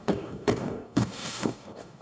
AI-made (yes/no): yes